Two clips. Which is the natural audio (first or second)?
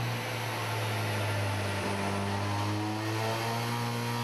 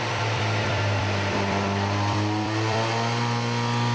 first